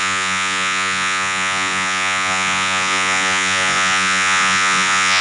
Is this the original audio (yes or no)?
no